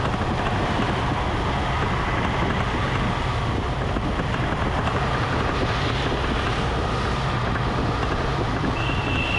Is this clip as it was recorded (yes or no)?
yes